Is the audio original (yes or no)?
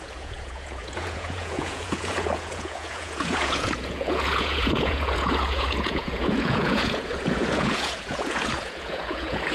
no